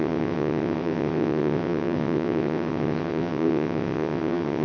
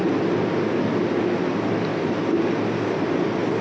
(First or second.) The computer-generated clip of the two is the first